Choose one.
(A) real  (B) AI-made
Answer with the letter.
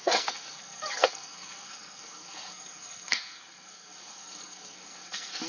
B